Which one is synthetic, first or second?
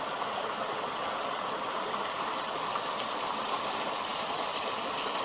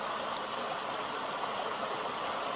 first